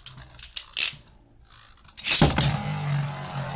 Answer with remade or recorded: recorded